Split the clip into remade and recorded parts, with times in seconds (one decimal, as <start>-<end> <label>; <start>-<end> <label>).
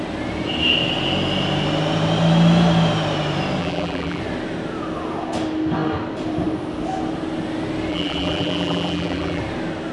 0.0-3.6 recorded; 3.6-4.2 remade; 4.2-7.9 recorded; 7.9-9.4 remade; 9.4-9.9 recorded